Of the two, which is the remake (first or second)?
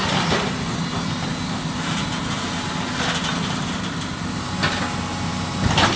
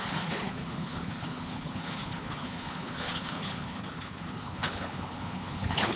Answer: second